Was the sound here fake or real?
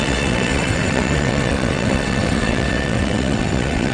fake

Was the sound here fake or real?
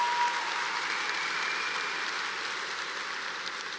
real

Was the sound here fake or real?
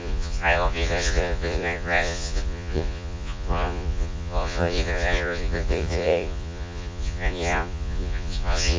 fake